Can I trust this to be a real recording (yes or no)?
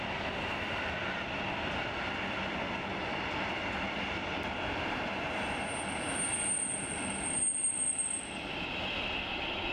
yes